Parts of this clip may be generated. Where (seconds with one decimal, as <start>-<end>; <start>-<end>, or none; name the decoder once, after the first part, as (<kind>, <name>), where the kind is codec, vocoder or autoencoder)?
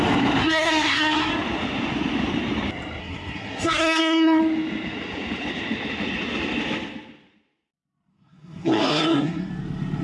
0.4-1.3 (codec, SNAC); 3.0-4.4; 8.1-9.5